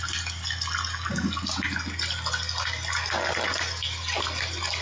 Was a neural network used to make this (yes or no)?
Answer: no